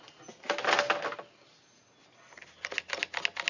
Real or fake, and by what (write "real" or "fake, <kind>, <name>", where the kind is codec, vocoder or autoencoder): real